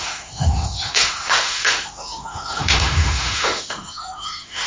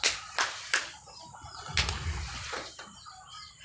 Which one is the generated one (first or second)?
first